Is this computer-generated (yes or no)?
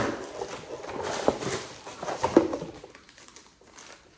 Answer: no